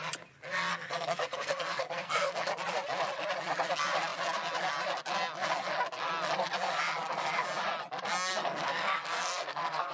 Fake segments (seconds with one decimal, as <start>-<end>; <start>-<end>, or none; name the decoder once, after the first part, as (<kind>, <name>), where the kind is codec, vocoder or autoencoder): 0.7-2.5 (codec, SNAC); 8.4-9.9